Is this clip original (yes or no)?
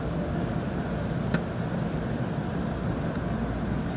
yes